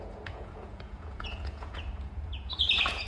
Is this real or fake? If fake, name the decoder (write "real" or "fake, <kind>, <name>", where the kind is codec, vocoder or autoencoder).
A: fake, vocoder, Vocos